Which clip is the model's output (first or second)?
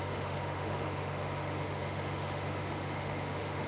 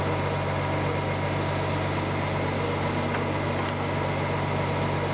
first